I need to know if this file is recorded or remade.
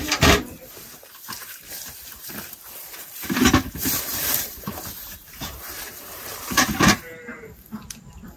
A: remade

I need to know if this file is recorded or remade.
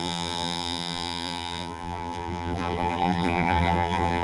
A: remade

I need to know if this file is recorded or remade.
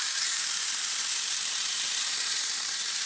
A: remade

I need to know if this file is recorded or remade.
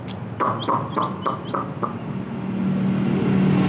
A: recorded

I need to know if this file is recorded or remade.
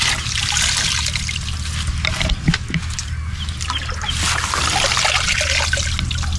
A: recorded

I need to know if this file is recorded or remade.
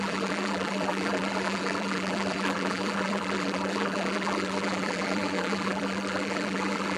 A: remade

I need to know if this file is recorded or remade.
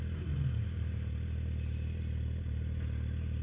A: recorded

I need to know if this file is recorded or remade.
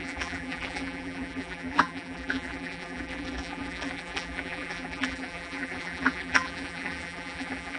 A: remade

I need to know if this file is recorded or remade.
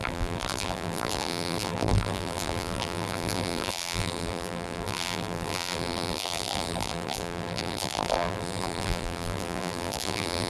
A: remade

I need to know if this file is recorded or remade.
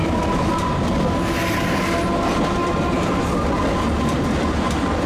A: recorded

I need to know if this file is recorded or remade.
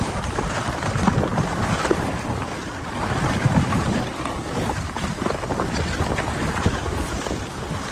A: remade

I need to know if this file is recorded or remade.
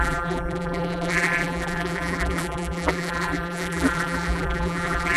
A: remade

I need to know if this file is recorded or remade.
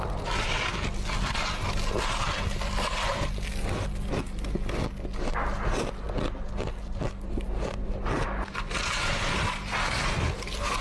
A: recorded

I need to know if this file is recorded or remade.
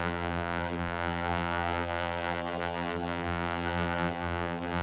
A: remade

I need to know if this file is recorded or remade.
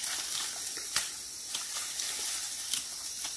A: recorded